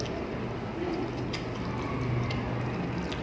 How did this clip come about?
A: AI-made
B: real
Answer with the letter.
B